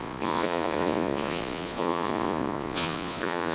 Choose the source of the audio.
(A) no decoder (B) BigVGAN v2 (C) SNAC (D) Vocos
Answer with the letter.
D